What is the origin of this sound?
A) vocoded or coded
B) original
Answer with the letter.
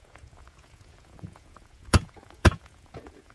A